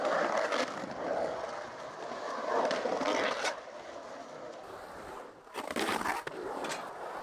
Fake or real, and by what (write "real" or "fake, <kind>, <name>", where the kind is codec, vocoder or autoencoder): real